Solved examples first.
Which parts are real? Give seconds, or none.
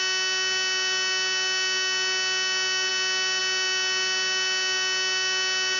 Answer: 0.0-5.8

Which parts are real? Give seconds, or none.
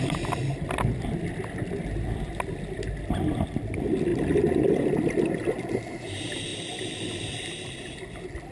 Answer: 0.0-8.5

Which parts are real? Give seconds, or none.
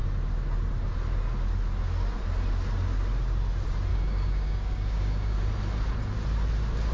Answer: 0.0-3.9; 5.4-6.9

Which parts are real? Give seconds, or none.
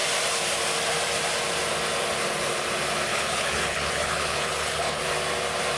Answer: 0.0-3.1; 5.0-5.8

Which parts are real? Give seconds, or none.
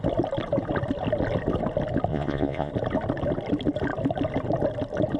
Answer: 0.0-2.1; 2.7-5.2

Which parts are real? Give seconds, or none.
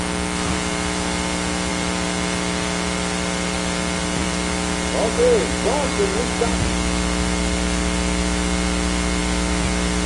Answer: 0.0-1.7; 4.0-10.1